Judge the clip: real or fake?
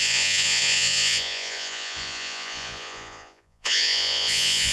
fake